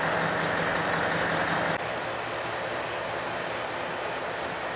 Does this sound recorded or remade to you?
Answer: recorded